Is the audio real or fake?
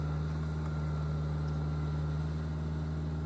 real